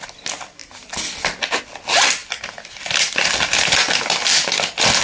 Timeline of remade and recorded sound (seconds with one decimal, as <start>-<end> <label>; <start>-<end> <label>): 0.0-5.0 recorded